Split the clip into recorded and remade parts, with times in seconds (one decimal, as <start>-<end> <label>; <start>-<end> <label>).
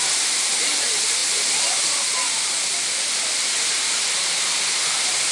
0.0-5.3 recorded